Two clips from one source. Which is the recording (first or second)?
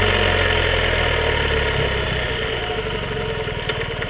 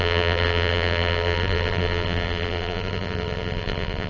first